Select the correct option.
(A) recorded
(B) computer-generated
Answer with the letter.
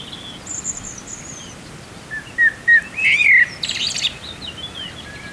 A